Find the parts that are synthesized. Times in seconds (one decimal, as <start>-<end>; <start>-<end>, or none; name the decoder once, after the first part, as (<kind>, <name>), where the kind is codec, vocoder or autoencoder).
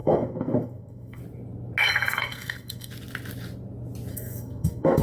0.0-1.2 (codec, SNAC); 1.8-2.9; 4.1-5.0